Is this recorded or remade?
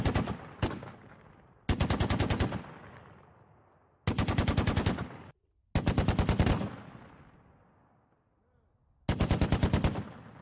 recorded